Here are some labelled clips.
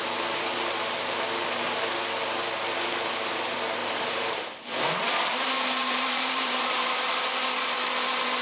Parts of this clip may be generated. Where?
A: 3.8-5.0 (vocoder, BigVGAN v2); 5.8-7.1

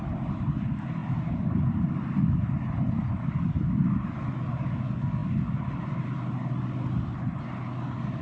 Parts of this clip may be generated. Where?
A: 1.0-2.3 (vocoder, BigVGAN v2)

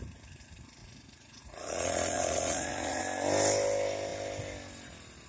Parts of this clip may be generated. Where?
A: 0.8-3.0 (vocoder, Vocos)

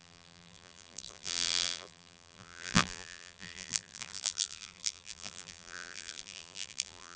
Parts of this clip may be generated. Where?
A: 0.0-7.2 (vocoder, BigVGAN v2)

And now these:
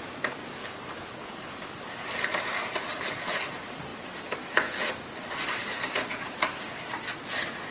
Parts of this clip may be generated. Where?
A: 0.6-1.5 (codec, HILCodec); 2.9-3.5